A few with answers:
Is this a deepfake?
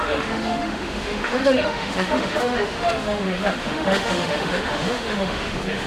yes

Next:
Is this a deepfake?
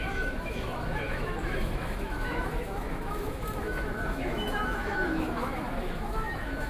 yes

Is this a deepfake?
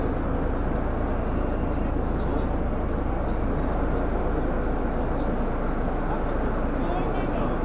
no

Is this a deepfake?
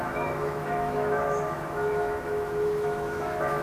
yes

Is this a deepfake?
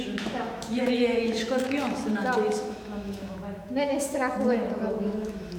yes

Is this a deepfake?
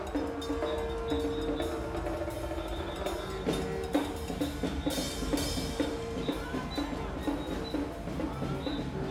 no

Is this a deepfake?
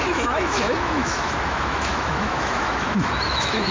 yes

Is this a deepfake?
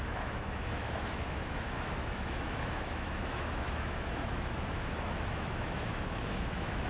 yes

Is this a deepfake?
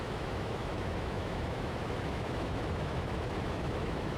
yes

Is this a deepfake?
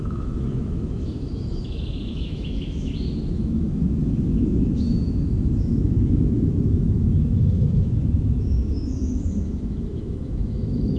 yes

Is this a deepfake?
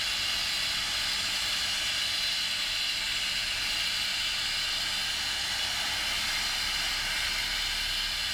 no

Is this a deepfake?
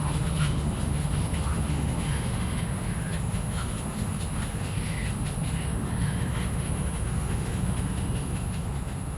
yes